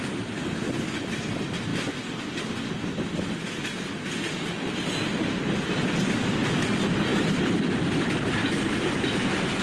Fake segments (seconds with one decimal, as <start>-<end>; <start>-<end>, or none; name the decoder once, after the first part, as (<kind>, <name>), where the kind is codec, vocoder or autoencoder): none